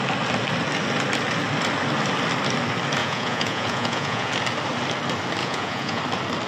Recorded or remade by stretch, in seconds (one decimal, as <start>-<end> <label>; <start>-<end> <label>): 0.0-3.0 recorded; 3.0-4.3 remade; 4.3-5.4 recorded; 5.4-6.0 remade; 6.0-6.5 recorded